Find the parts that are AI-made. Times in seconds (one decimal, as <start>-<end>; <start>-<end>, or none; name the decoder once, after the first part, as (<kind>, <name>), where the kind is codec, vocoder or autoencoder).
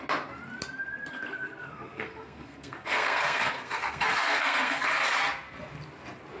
1.1-4.9 (codec, SNAC)